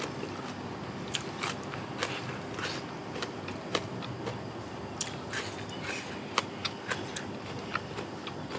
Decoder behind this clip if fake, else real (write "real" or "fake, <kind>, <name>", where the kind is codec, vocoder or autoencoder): real